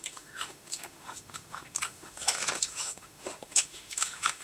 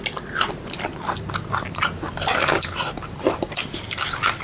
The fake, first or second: first